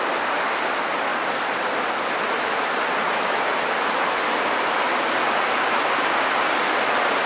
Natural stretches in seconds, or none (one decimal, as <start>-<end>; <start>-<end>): 0.0-7.3